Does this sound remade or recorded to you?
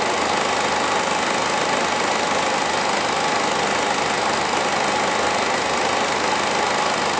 recorded